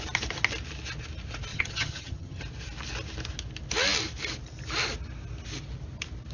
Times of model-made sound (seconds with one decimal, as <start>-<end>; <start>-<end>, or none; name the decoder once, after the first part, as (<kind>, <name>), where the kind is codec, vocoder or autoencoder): 1.5-2.4 (vocoder, HiFi-GAN)